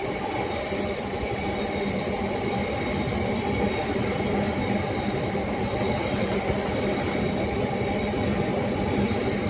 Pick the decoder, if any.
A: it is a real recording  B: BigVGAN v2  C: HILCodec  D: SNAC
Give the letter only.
A